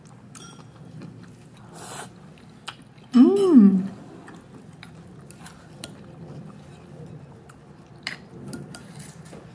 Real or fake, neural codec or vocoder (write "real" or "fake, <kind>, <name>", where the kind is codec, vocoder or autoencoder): real